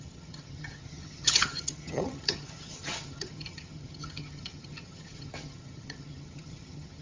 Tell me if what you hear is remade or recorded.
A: remade